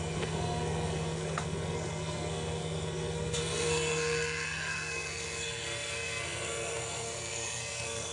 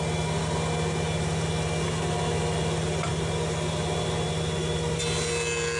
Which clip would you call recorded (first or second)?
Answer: second